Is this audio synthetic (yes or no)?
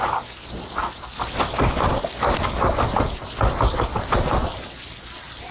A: no